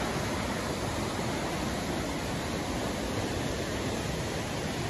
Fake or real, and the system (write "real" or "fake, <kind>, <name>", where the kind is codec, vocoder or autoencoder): real